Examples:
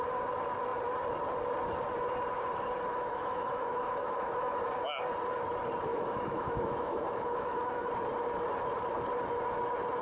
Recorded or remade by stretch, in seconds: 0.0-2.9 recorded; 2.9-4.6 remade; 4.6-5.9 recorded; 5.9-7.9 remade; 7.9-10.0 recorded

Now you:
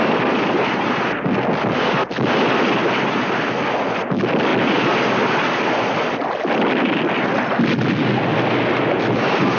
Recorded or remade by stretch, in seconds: 0.0-9.6 recorded

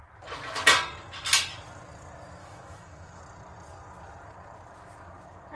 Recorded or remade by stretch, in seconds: 0.0-2.4 recorded; 2.4-3.2 remade; 3.2-5.5 recorded

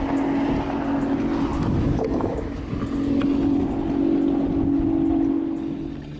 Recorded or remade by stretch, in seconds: 0.0-1.5 recorded; 1.5-2.6 remade; 2.6-6.2 recorded

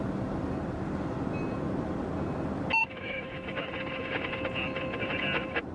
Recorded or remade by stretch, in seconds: 0.0-2.8 recorded; 2.8-3.7 remade; 3.7-5.7 recorded

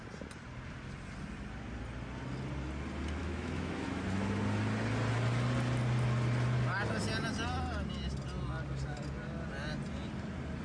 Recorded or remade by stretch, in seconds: 0.0-3.2 recorded; 3.2-4.0 remade; 4.0-10.6 recorded

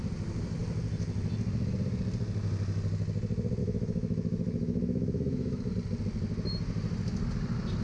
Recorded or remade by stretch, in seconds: 0.0-3.6 recorded; 3.6-5.7 remade; 5.7-7.8 recorded